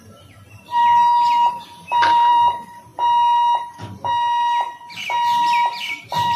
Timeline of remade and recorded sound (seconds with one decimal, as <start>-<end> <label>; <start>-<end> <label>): 0.0-0.8 remade; 0.8-1.5 recorded; 1.5-2.9 remade; 2.9-5.9 recorded; 5.9-6.4 remade